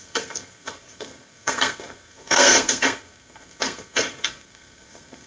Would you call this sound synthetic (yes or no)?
yes